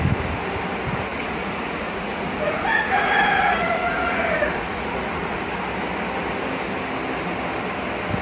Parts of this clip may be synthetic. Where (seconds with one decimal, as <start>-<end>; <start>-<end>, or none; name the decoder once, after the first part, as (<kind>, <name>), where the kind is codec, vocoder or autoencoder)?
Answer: 1.1-5.4 (vocoder, Vocos)